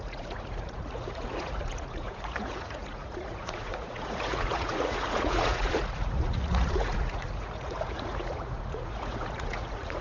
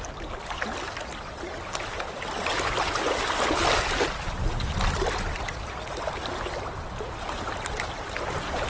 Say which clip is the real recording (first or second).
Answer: second